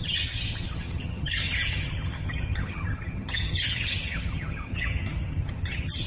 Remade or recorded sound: remade